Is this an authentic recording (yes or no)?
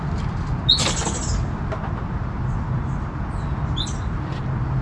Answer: yes